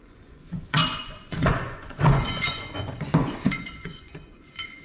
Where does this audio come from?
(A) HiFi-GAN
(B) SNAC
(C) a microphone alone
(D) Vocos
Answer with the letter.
D